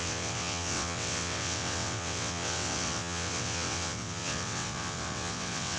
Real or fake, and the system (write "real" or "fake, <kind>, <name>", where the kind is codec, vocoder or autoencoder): fake, vocoder, WaveNeXt